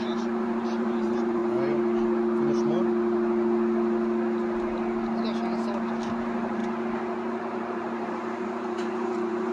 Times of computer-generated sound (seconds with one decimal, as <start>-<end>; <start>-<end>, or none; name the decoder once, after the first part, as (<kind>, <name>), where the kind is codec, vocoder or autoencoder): 0.0-1.4 (vocoder, BigVGAN v2); 6.1-6.6; 7.4-9.5